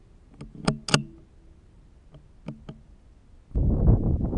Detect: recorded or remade recorded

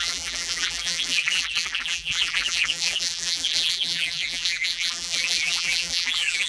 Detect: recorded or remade remade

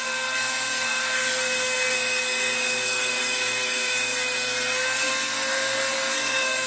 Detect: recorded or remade remade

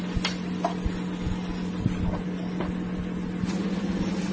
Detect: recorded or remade recorded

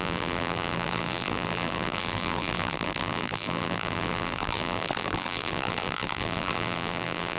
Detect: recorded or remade remade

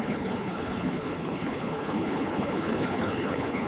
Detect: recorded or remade remade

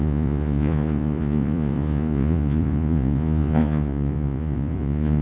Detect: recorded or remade remade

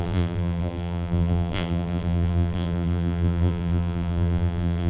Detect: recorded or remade remade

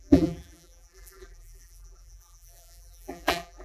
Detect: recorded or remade remade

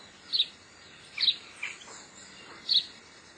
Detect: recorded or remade recorded